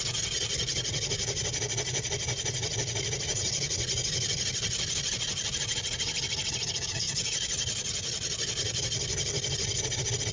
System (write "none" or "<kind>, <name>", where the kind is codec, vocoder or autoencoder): none